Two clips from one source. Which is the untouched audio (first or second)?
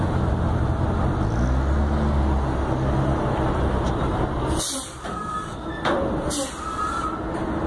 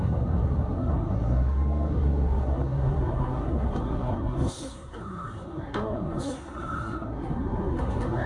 first